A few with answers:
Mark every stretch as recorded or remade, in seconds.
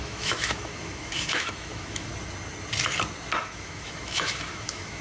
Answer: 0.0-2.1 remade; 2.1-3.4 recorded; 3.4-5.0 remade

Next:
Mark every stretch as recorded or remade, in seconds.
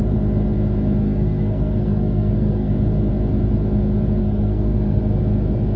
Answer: 0.0-1.0 recorded; 1.0-2.7 remade; 2.7-4.2 recorded; 4.2-5.0 remade; 5.0-5.8 recorded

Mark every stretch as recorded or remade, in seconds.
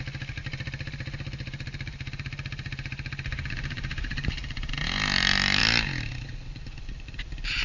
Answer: 0.0-0.4 recorded; 0.4-4.7 remade; 4.7-7.6 recorded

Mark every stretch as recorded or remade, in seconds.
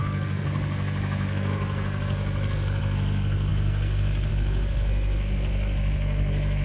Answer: 0.0-6.6 remade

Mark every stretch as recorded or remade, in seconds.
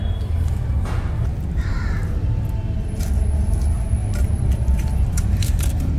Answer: 0.0-4.0 recorded; 4.0-6.0 remade